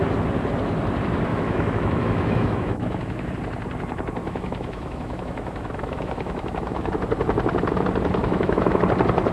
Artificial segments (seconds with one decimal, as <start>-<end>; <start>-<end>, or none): 1.3-3.3; 4.2-6.9; 8.2-8.8